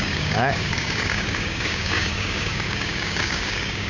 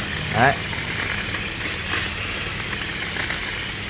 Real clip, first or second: second